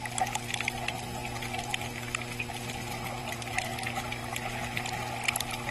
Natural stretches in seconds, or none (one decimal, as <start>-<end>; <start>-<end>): 0.0-3.2; 3.8-5.7